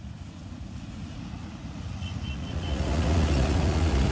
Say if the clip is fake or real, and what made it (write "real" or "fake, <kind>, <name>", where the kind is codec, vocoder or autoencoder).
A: fake, vocoder, Vocos